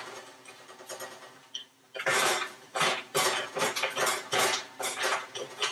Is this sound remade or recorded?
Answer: remade